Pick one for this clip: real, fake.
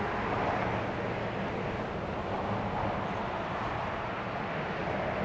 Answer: real